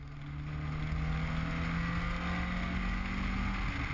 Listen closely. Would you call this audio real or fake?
real